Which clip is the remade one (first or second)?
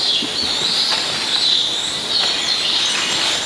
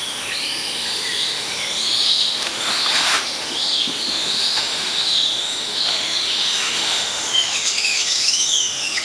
second